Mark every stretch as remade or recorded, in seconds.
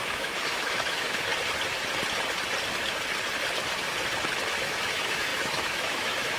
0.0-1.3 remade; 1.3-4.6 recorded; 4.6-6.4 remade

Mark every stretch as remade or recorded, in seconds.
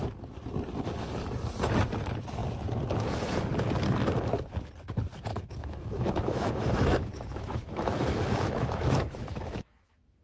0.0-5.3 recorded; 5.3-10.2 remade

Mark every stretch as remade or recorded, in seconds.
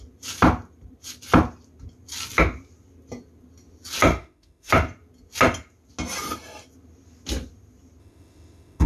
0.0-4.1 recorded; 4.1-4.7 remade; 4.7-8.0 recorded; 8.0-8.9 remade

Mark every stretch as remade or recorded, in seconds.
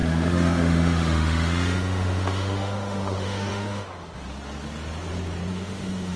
0.0-4.2 remade; 4.2-5.5 recorded; 5.5-6.2 remade